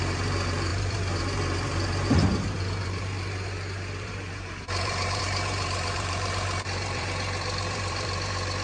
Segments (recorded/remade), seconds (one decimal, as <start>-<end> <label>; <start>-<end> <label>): 0.0-8.6 remade